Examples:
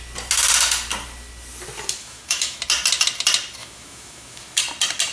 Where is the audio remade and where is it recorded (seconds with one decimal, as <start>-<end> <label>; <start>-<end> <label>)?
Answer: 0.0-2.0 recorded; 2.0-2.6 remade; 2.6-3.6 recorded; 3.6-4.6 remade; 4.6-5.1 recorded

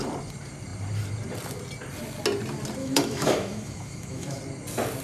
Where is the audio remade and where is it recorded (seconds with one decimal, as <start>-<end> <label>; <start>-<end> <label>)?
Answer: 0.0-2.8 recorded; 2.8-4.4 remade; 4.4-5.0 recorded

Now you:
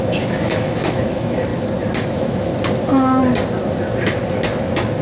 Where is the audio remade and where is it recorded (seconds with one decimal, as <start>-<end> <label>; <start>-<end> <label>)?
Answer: 0.0-1.5 remade; 1.5-2.1 recorded; 2.1-2.5 remade; 2.5-5.0 recorded

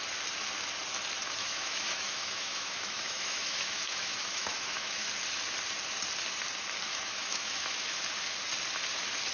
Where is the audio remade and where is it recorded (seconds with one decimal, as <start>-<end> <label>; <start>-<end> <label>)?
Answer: 0.0-1.4 recorded; 1.4-5.1 remade; 5.1-6.9 recorded; 6.9-8.0 remade; 8.0-9.3 recorded

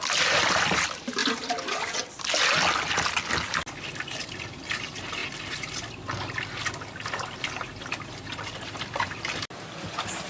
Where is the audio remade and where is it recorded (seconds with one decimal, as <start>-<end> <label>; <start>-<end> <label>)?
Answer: 0.0-10.3 recorded

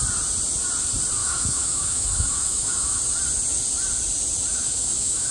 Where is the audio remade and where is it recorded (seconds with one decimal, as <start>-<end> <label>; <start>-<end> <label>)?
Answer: 0.0-1.2 recorded; 1.2-3.0 remade; 3.0-4.5 recorded; 4.5-5.3 remade

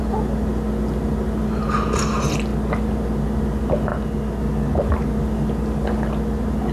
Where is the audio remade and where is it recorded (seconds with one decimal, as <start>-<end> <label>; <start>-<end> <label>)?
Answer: 0.0-6.7 recorded